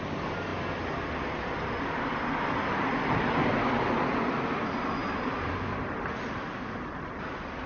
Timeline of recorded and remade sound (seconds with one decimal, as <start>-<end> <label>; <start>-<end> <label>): 0.0-5.0 recorded; 5.0-5.5 remade; 5.5-7.7 recorded